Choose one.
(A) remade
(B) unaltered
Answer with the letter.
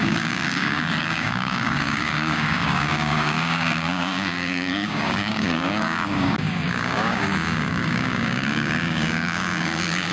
A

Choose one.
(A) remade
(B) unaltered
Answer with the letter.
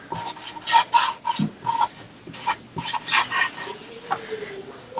B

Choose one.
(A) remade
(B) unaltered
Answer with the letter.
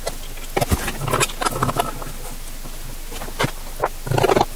B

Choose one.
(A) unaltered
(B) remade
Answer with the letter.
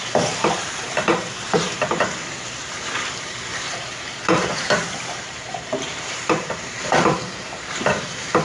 B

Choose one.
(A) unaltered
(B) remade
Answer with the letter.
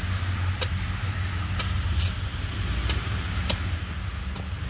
A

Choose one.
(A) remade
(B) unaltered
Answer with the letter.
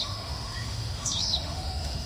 A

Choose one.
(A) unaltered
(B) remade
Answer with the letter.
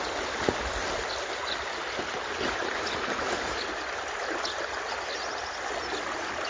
A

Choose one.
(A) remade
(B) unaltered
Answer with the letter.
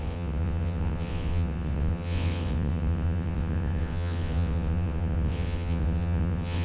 A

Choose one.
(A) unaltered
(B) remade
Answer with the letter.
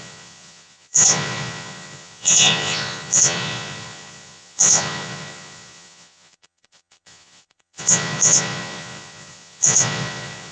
B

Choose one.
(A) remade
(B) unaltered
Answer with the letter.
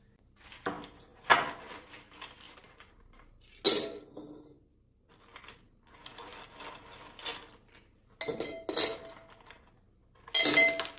B